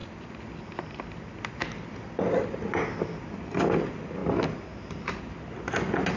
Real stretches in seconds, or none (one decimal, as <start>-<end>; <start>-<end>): 0.0-6.2

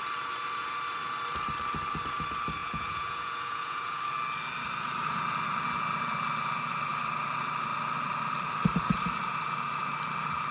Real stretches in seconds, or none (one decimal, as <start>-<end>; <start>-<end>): 0.0-2.6; 4.0-10.5

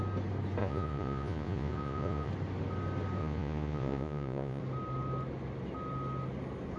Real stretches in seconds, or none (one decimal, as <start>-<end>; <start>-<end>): 0.0-0.6; 2.3-3.2; 4.6-6.8